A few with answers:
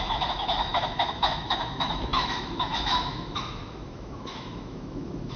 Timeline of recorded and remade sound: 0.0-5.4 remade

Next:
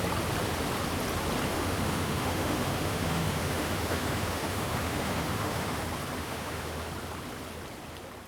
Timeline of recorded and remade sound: 0.0-1.5 recorded; 1.5-5.8 remade; 5.8-6.2 recorded; 6.2-6.9 remade; 6.9-8.3 recorded